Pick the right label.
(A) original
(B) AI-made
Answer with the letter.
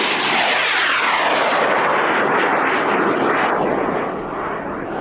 A